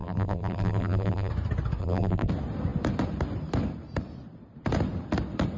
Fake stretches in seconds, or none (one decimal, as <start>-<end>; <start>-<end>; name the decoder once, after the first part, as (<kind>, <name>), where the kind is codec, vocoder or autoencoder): 0.0-1.3 (vocoder, BigVGAN v2); 1.8-2.3